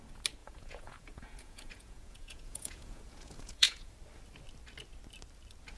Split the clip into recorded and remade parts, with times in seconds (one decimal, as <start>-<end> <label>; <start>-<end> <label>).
0.0-0.4 recorded; 0.4-3.9 remade; 3.9-5.8 recorded